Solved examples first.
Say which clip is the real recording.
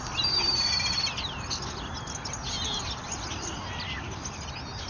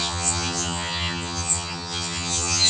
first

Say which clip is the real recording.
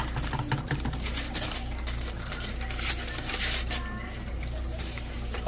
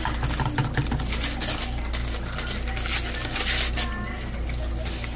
second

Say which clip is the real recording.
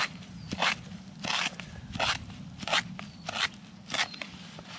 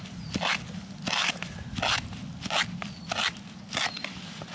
second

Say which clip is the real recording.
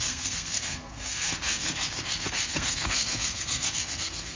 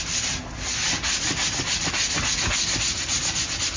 second